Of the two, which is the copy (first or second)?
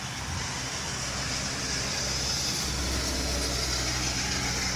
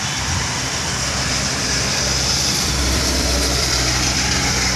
second